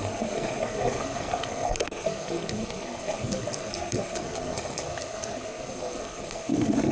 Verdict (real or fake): fake